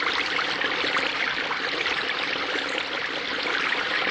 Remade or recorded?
remade